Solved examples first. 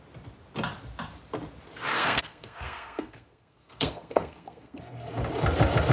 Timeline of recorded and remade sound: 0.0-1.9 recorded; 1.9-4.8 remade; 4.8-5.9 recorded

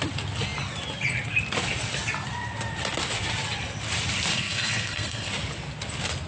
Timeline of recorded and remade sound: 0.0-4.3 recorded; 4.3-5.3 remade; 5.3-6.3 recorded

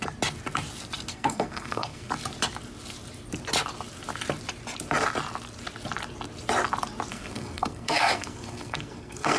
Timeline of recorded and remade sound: 0.0-1.1 recorded; 1.1-2.1 remade; 2.1-7.1 recorded; 7.1-9.4 remade

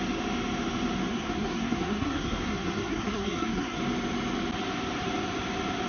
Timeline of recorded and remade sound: 0.0-1.1 recorded; 1.1-3.8 remade; 3.8-5.9 recorded

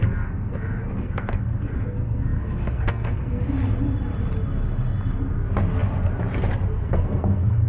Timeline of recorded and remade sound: 0.0-3.4 remade; 3.4-6.7 recorded; 6.7-7.7 remade

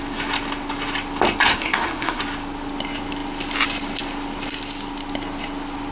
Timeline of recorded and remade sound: 0.0-1.5 recorded; 1.5-2.2 remade; 2.2-5.9 recorded

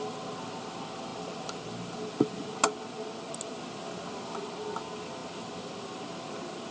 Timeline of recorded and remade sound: 0.0-6.7 recorded

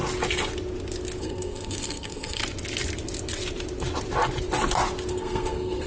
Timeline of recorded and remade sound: 0.0-1.2 recorded; 1.2-2.4 remade; 2.4-5.1 recorded; 5.1-5.9 remade